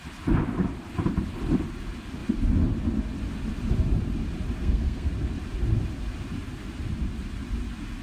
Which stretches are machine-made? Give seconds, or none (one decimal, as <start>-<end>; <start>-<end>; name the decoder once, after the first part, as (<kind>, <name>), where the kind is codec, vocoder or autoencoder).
4.6-5.1 (codec, SNAC)

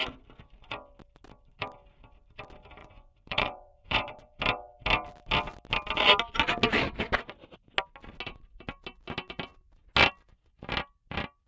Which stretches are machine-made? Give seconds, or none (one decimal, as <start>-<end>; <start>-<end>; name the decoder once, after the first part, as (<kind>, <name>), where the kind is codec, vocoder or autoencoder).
2.8-4.4 (vocoder, Vocos)